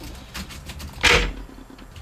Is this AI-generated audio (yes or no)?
no